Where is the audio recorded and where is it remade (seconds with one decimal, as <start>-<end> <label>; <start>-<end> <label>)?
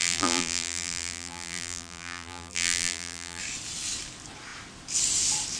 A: 0.0-3.4 remade; 3.4-5.6 recorded